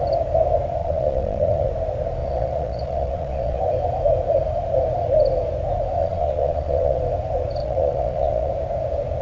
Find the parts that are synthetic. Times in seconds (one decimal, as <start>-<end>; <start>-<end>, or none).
0.8-1.7; 2.2-3.6; 6.0-7.0; 7.6-8.5